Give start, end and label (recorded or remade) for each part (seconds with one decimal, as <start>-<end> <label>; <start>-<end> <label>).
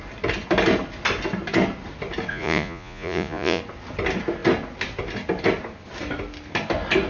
0.0-2.3 recorded; 2.3-3.6 remade; 3.6-7.1 recorded